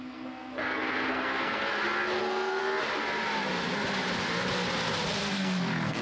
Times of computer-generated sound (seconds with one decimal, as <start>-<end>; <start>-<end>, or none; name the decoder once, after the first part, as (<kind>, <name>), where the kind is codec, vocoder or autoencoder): 0.0-1.7 (codec, SNAC); 2.2-2.6; 5.2-6.0